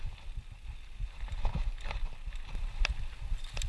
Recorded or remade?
recorded